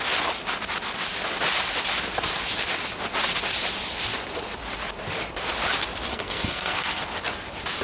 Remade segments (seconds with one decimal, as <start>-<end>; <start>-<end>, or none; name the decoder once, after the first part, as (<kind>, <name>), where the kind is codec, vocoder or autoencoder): 6.1-7.0 (codec, SNAC)